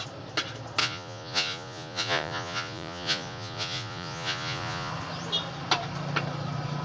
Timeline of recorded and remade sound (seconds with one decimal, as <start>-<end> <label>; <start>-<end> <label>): 0.0-0.8 recorded; 0.8-4.9 remade; 4.9-6.8 recorded